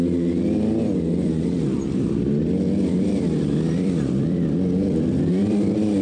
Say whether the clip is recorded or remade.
remade